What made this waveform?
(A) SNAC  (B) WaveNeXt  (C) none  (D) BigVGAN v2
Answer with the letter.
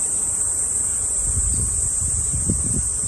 D